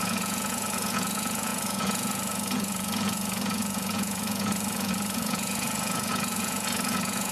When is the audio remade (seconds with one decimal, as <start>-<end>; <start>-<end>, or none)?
0.0-7.3